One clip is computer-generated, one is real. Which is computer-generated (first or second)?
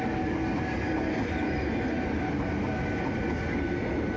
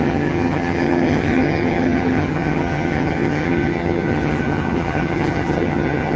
second